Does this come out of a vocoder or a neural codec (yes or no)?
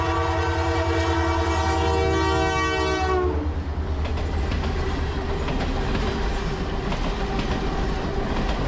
no